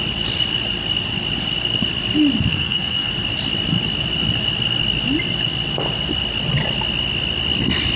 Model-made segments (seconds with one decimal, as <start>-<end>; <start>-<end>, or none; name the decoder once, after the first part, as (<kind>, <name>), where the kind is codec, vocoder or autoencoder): 2.5-3.1 (codec, SNAC)